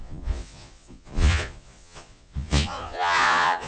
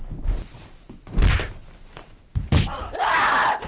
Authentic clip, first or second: second